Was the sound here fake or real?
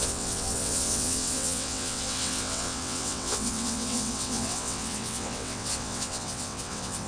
fake